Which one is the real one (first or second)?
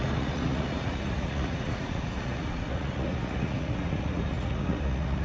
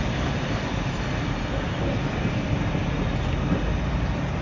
second